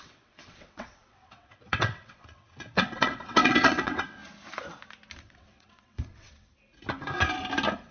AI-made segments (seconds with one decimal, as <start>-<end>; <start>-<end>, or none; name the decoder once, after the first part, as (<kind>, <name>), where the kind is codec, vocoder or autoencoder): 0.0-4.2 (vocoder, WaveNeXt); 5.2-6.5